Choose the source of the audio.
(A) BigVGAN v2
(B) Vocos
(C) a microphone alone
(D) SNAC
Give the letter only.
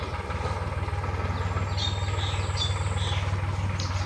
C